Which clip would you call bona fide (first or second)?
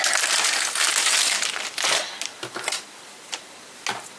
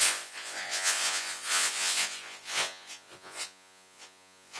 first